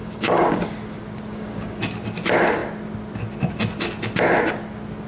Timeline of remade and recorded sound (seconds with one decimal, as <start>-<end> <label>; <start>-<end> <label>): 0.0-0.7 remade; 0.7-1.3 recorded; 1.3-1.8 remade; 1.8-5.1 recorded